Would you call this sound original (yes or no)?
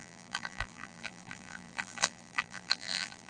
no